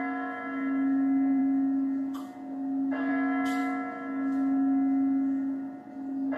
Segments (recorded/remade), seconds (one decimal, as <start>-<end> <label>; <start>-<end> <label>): 0.0-6.4 recorded